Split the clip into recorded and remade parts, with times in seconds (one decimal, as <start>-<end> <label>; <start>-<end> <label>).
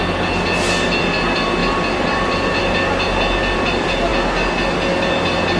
0.0-1.6 recorded; 1.6-2.6 remade; 2.6-5.6 recorded